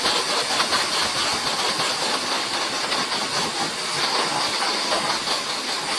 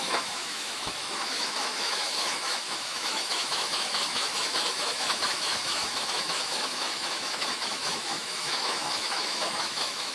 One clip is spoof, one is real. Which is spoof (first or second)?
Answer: second